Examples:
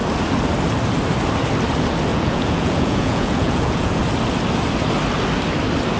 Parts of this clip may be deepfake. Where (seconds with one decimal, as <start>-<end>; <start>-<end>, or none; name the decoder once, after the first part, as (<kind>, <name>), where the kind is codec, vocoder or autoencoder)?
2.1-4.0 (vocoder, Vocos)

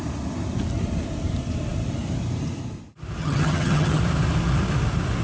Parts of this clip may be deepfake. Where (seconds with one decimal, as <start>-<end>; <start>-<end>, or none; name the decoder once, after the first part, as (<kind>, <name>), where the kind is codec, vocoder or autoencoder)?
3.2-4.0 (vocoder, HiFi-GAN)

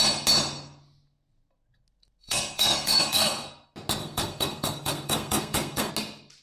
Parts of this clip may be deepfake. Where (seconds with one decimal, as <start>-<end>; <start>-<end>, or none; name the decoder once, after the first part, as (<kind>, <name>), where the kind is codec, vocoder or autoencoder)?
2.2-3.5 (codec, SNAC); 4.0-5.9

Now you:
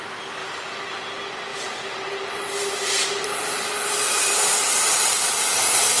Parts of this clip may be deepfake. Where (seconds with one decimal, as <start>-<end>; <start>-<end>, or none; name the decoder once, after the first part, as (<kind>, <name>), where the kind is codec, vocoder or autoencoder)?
1.5-5.1 (vocoder, BigVGAN v2)

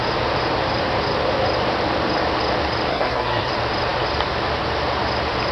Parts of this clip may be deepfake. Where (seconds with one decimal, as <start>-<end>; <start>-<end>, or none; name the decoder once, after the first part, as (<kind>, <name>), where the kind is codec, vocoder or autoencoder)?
2.9-3.5 (codec, SNAC)

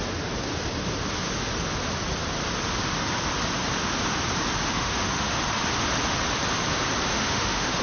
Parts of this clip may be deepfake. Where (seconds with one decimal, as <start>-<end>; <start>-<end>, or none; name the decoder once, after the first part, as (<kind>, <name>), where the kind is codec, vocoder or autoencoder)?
4.6-5.3 (autoencoder, DAC-VAE); 7.1-7.8

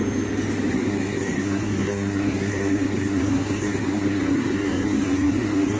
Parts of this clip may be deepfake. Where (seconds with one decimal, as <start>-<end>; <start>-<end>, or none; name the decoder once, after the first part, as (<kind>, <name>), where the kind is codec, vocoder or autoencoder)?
0.7-5.8 (codec, SNAC)